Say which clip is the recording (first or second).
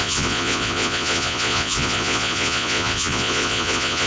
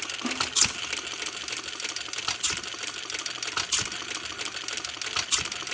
second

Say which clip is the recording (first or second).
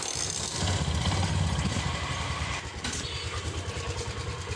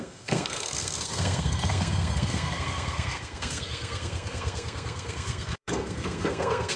first